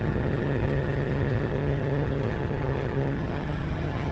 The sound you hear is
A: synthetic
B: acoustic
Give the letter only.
A